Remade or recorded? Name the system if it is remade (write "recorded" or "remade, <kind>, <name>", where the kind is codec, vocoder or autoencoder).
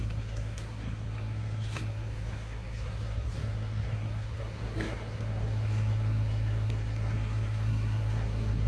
remade, codec, SNAC